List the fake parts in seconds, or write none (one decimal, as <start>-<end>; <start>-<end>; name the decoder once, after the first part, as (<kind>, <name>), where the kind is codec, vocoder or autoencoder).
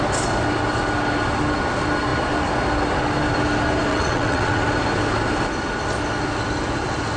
3.9-4.6 (vocoder, WaveNeXt)